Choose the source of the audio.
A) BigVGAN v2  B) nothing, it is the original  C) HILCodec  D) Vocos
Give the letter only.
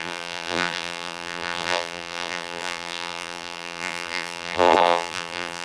A